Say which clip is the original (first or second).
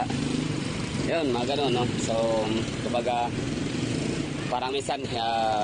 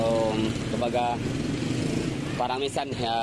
second